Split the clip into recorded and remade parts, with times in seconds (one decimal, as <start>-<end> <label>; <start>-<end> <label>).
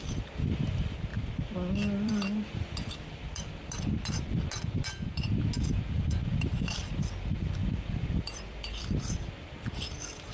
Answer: 0.0-1.1 recorded; 1.1-2.1 remade; 2.1-7.6 recorded; 7.6-8.8 remade; 8.8-10.3 recorded